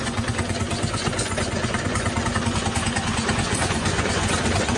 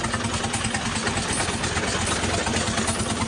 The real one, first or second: second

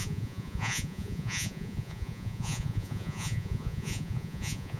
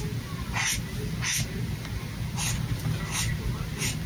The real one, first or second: second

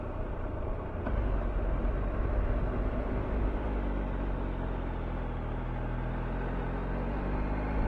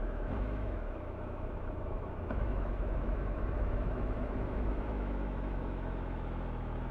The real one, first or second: first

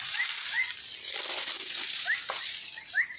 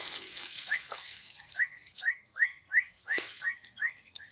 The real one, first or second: first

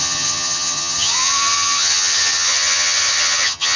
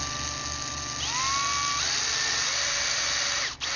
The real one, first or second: second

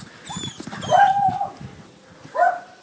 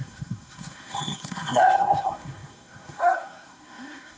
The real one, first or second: first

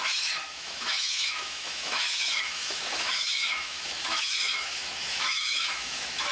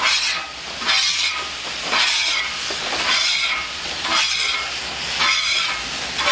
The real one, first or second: second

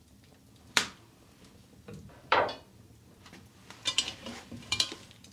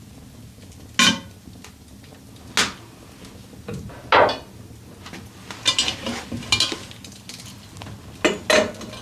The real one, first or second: second